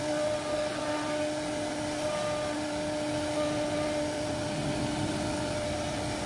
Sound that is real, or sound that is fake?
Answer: real